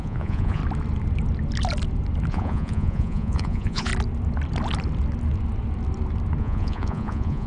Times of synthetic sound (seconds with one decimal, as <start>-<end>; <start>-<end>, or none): 0.0-0.6; 2.3-3.9; 6.4-7.5